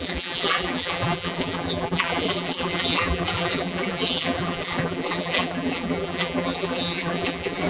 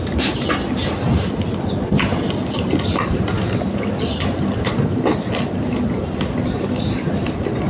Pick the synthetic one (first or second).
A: first